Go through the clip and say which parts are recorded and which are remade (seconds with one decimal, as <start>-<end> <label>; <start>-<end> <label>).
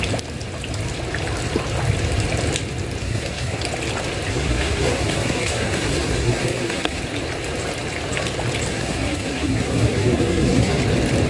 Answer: 0.0-3.0 recorded; 3.0-3.6 remade; 3.6-4.3 recorded; 4.3-7.0 remade; 7.0-8.7 recorded; 8.7-10.8 remade; 10.8-11.3 recorded